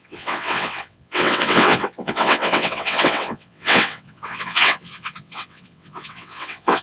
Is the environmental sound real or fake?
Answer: fake